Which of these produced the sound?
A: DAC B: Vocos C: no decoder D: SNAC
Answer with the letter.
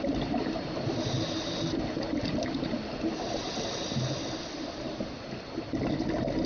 C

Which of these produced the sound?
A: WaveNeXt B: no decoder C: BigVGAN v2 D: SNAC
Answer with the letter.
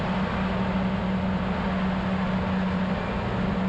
B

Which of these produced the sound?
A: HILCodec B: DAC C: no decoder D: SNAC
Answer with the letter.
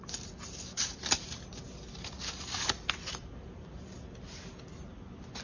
C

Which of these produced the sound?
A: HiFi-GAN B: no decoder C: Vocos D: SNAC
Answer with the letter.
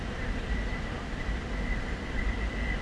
B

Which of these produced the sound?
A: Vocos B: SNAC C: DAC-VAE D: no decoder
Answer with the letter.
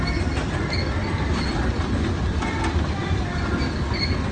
D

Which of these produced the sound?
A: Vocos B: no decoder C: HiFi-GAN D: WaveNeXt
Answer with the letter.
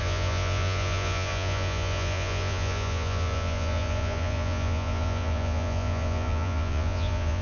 A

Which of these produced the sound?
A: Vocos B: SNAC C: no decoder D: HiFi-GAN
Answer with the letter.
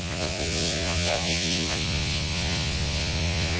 A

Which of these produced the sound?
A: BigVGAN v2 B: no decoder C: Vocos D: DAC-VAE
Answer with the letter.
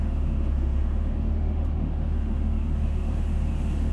D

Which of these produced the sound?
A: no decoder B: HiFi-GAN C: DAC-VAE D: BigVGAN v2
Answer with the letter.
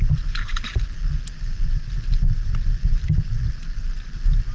A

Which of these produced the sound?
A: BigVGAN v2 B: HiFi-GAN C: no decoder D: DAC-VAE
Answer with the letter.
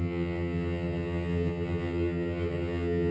B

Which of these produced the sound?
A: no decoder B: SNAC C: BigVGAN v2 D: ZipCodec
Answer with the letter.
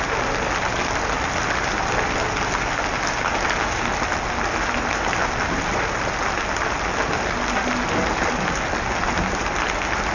A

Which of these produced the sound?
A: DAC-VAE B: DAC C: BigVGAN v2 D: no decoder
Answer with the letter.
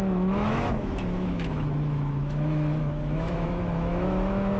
A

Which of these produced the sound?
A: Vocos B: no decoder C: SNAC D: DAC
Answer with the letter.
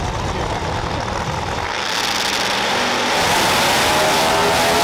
B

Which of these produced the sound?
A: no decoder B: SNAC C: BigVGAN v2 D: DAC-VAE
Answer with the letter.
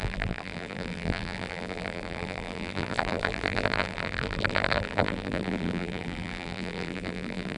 C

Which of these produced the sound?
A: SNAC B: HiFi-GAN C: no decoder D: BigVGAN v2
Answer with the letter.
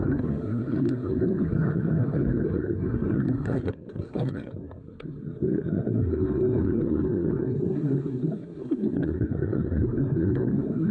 A